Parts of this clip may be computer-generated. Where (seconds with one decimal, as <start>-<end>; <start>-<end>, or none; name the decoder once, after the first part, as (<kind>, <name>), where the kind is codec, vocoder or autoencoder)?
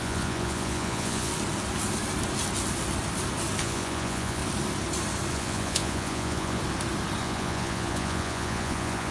0.0-1.3 (vocoder, Vocos); 3.6-4.4; 5.3-6.6; 7.2-9.1